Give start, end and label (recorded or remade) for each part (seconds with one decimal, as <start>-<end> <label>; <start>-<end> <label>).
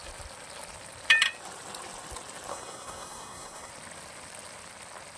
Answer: 0.0-2.5 recorded; 2.5-3.7 remade; 3.7-5.2 recorded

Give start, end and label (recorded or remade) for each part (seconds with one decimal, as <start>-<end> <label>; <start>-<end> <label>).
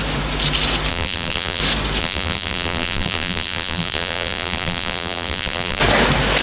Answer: 0.0-0.9 recorded; 0.9-1.6 remade; 1.6-2.0 recorded; 2.0-5.8 remade; 5.8-6.4 recorded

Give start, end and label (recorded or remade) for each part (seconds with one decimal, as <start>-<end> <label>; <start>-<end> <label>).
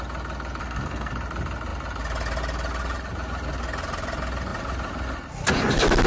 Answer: 0.0-0.6 recorded; 0.6-1.1 remade; 1.1-6.1 recorded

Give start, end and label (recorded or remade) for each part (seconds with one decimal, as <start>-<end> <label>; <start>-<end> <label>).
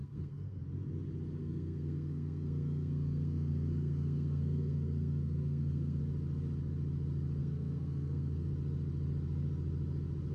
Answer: 0.0-0.6 remade; 0.6-1.4 recorded; 1.4-6.0 remade; 6.0-7.4 recorded; 7.4-8.5 remade; 8.5-10.3 recorded